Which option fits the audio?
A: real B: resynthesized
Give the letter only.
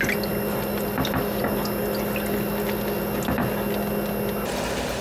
A